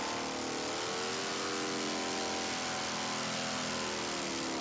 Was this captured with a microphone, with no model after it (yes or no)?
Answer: yes